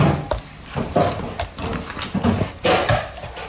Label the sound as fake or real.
real